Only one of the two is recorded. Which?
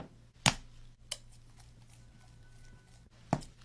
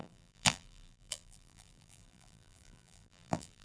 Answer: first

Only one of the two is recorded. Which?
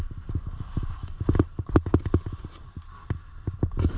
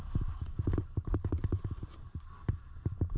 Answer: first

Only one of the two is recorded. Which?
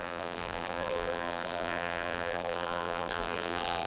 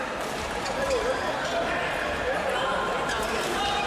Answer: second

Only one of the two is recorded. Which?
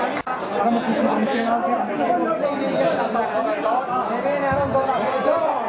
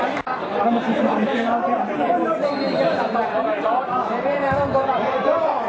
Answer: first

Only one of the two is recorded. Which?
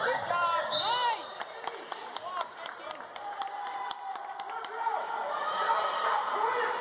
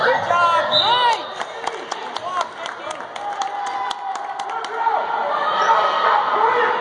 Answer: second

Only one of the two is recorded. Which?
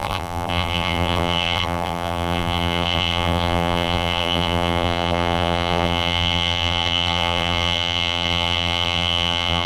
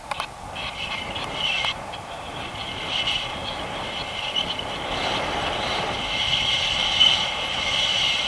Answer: second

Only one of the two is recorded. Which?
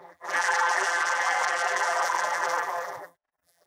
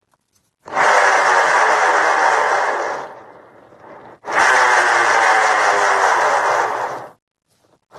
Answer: second